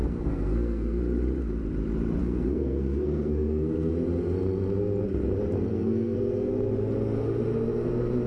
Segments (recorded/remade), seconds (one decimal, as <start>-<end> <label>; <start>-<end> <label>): 0.0-1.0 remade; 1.0-2.2 recorded; 2.2-3.9 remade; 3.9-5.7 recorded; 5.7-6.5 remade; 6.5-8.3 recorded

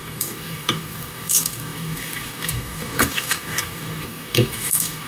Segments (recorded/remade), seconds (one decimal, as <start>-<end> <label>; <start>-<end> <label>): 0.0-5.1 remade